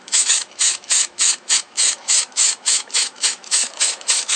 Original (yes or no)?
no